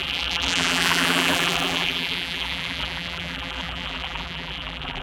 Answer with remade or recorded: remade